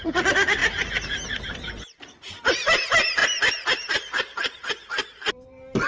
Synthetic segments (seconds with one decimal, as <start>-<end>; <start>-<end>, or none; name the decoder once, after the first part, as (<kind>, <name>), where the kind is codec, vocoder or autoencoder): 0.0-0.6 (vocoder, BigVGAN v2); 1.4-3.2; 3.9-5.9